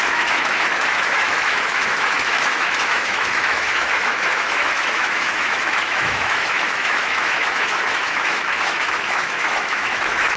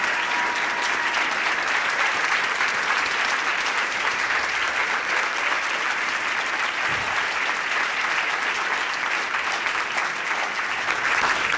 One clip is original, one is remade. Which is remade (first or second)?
first